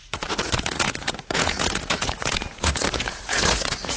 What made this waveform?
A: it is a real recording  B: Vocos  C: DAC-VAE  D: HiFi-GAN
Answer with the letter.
B